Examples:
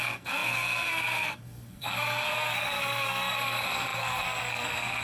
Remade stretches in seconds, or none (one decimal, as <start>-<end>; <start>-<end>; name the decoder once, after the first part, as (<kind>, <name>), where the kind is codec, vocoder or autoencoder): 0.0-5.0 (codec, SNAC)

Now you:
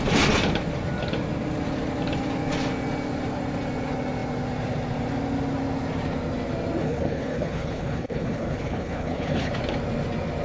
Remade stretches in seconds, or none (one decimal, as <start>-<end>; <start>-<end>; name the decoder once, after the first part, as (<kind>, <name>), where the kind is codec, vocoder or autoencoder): 6.8-9.5 (codec, HILCodec)

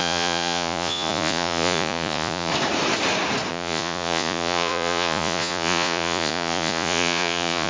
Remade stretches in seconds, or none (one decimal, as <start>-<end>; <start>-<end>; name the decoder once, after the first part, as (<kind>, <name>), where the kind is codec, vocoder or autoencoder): 0.0-2.5 (vocoder, Vocos); 3.5-7.7